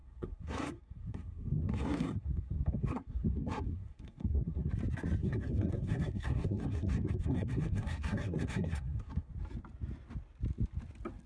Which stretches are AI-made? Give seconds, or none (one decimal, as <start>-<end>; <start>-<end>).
0.0-4.7; 5.2-9.3